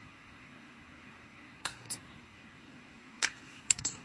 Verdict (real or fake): fake